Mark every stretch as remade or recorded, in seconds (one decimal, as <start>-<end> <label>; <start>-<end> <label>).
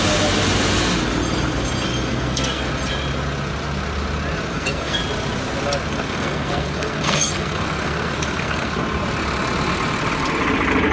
0.0-2.1 recorded; 2.1-2.7 remade; 2.7-4.5 recorded; 4.5-5.0 remade; 5.0-5.9 recorded; 5.9-8.8 remade; 8.8-10.9 recorded